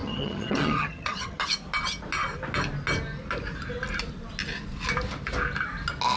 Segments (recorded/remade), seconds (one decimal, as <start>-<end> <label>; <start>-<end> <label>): 0.0-1.4 remade; 1.4-6.2 recorded